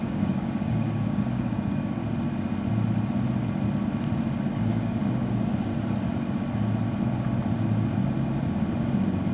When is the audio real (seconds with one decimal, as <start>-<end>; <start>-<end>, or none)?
2.0-4.5; 5.7-9.3